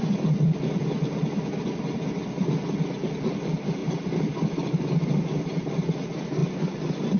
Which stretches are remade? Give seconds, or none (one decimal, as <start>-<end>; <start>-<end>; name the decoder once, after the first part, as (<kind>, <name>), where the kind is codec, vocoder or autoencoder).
3.8-5.1 (vocoder, BigVGAN v2); 6.4-7.2